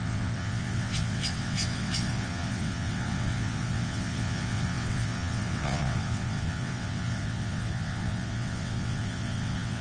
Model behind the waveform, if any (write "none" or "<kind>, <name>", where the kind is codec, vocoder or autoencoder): vocoder, WaveNeXt